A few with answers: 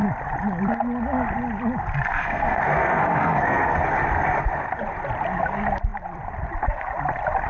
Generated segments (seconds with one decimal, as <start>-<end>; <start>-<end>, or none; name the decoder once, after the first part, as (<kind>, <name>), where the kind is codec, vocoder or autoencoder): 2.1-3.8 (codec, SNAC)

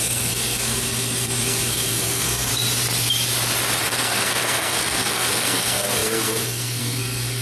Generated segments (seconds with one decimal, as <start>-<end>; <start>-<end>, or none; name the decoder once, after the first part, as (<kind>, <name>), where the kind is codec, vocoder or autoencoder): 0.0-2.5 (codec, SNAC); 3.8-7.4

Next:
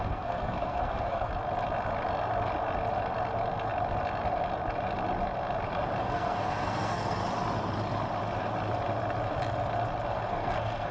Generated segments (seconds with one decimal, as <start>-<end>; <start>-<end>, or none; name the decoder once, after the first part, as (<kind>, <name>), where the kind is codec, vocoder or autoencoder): 0.0-1.3 (codec, SNAC); 6.0-7.2; 10.1-10.9

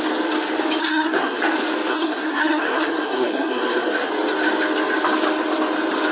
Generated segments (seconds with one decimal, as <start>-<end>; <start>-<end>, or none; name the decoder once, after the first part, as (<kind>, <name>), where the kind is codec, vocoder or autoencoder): 0.8-1.4 (codec, SNAC); 1.9-4.1

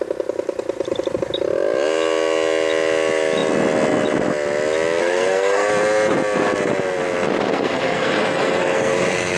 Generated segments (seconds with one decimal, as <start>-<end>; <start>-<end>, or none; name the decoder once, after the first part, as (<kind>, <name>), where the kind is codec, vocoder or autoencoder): 5.0-5.7 (codec, SNAC); 7.5-9.4

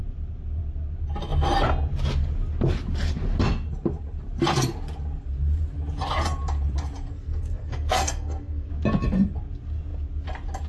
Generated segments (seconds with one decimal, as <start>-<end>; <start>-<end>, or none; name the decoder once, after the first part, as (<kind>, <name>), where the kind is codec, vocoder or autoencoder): 7.1-8.7 (codec, SNAC)